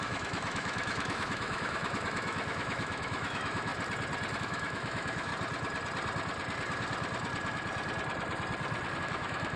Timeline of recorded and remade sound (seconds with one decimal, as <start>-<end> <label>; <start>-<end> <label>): 0.0-3.7 remade; 3.7-4.4 recorded; 4.4-5.3 remade; 5.3-9.0 recorded; 9.0-9.6 remade